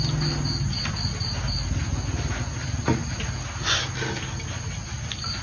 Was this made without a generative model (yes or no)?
yes